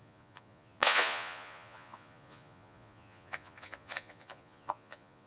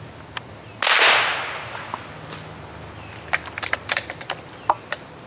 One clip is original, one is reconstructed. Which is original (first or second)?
second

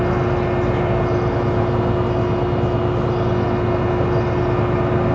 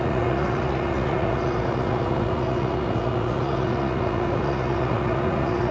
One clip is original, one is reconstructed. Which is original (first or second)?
first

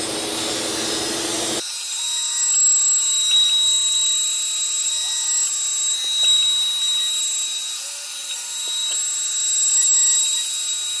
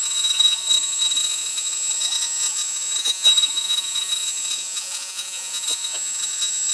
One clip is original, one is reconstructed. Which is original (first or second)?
first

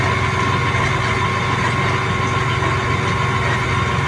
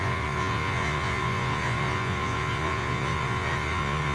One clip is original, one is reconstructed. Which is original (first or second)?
first